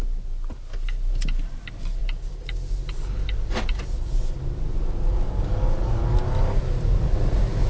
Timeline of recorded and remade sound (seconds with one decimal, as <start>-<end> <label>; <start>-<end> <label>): 0.0-7.7 recorded